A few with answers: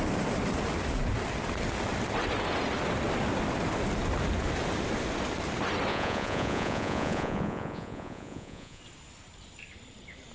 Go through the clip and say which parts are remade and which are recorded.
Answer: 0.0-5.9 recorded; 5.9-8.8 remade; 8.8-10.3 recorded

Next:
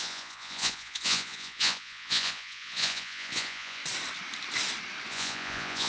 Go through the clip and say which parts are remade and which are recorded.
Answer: 0.0-3.8 remade; 3.8-5.1 recorded; 5.1-5.9 remade